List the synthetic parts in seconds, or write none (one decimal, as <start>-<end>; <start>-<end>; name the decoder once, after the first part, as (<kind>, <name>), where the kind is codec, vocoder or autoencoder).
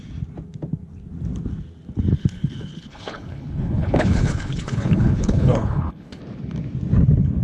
2.1-6.2 (codec, HILCodec)